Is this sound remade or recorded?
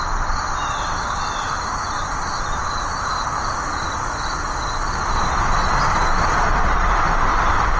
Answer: recorded